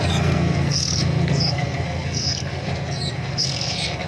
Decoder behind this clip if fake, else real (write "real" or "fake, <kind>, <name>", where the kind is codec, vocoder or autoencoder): fake, codec, SNAC